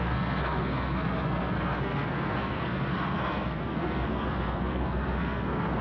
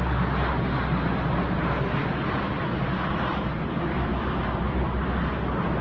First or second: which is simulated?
first